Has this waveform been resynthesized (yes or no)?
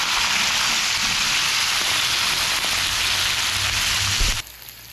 no